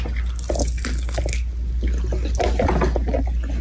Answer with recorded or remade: recorded